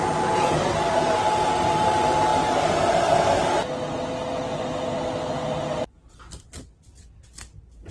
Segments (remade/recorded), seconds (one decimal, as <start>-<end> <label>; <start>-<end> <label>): 0.0-7.9 recorded